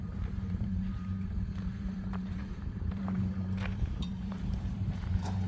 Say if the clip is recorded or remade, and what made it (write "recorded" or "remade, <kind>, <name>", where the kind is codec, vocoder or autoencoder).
remade, vocoder, BigVGAN v2